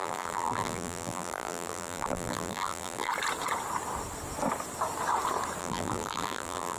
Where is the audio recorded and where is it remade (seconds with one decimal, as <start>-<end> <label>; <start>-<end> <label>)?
0.0-3.1 remade; 3.1-5.6 recorded; 5.6-6.8 remade